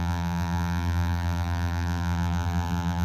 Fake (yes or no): yes